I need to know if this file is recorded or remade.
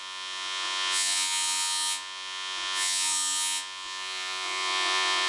remade